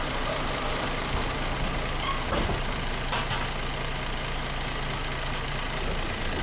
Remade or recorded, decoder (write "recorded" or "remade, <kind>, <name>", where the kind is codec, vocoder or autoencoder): recorded